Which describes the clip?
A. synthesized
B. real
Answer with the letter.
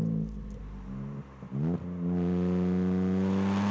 B